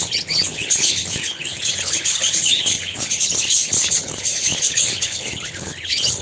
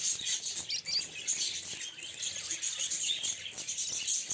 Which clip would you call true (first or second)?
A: second